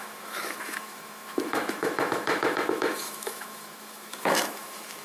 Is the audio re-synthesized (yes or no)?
yes